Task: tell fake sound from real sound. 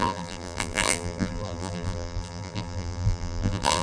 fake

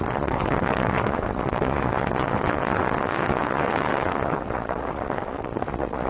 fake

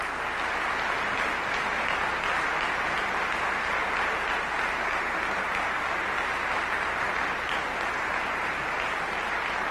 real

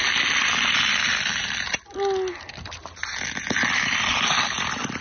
real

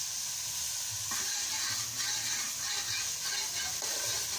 real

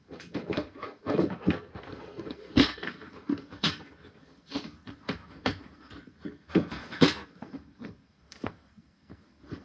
fake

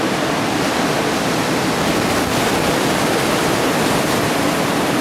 real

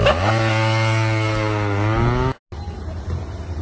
real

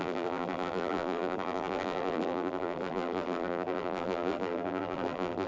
fake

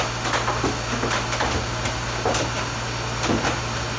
real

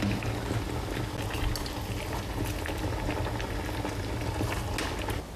real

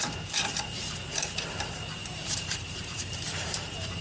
fake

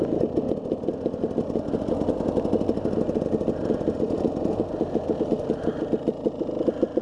real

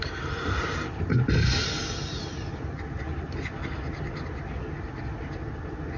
real